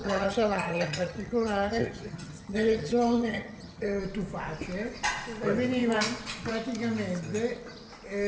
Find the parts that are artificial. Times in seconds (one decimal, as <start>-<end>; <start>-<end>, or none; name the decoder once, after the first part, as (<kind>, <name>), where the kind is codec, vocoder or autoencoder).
0.0-4.0 (vocoder, HiFi-GAN)